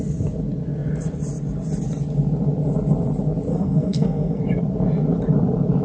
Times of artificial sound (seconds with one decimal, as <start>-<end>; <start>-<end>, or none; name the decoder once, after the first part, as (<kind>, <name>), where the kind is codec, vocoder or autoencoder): 3.5-4.4 (codec, SNAC)